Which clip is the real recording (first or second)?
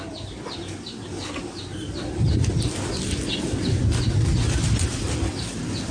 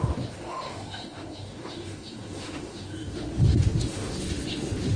first